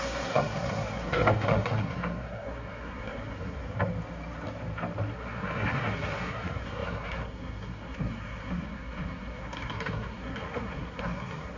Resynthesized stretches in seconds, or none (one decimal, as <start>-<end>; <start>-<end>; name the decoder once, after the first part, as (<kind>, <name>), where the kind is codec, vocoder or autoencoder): 0.0-3.6 (codec, SNAC); 5.1-11.6